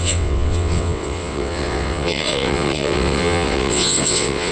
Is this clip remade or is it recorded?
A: remade